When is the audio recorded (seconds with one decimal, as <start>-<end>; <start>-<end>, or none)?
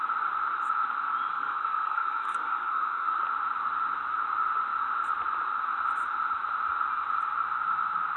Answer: 0.0-1.3; 3.2-8.2